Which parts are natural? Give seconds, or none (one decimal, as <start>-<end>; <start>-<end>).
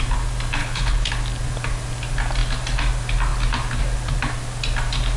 0.0-0.6; 1.1-5.2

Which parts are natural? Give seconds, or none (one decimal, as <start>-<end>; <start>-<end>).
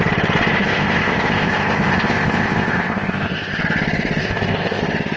0.0-0.5; 3.6-4.2; 4.8-5.2